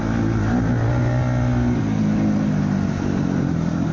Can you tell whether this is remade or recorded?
recorded